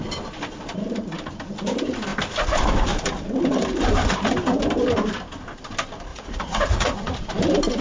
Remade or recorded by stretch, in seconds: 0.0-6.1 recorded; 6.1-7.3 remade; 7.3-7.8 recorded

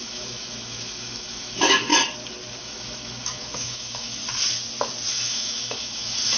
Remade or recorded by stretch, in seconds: 0.0-1.9 remade; 1.9-2.6 recorded; 2.6-4.2 remade; 4.2-5.1 recorded; 5.1-6.4 remade